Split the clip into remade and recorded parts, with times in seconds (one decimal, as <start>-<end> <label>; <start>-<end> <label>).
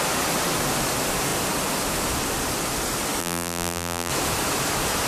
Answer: 0.0-3.2 recorded; 3.2-4.1 remade; 4.1-5.1 recorded